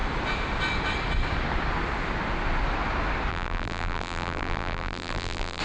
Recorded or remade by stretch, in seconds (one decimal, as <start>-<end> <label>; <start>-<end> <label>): 0.0-3.3 recorded; 3.3-5.6 remade